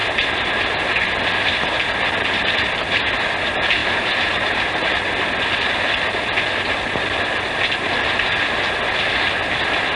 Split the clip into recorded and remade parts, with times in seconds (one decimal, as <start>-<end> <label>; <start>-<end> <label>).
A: 0.0-0.8 remade; 0.8-3.8 recorded; 3.8-5.1 remade; 5.1-10.0 recorded